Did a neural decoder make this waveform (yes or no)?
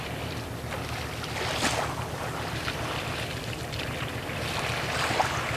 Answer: no